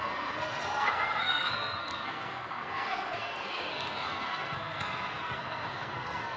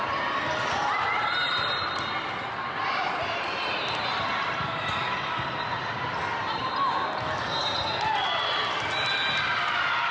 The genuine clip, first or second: second